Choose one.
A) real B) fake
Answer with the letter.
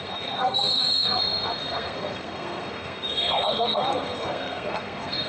B